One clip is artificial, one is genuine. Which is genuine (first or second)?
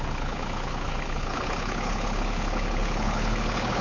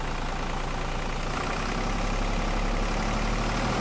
second